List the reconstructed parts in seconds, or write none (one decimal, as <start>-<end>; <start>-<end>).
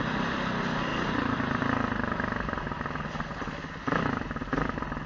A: 0.9-1.4